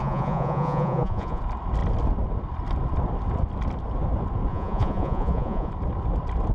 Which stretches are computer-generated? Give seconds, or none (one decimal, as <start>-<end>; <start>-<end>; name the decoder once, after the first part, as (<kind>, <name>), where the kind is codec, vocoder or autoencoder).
0.0-1.4 (vocoder, Vocos); 4.5-5.7